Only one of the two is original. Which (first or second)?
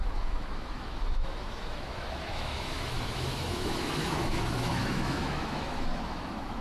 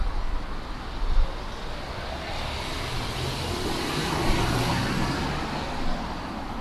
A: second